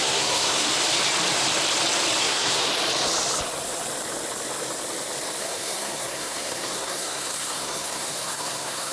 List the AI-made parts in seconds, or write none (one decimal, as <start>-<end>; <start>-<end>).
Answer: 0.0-0.7; 2.2-2.7; 5.4-8.9